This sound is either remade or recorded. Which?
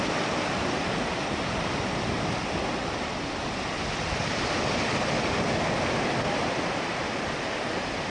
recorded